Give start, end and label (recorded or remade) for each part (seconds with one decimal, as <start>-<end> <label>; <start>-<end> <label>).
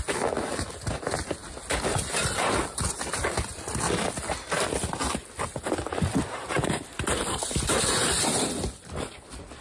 0.0-9.6 recorded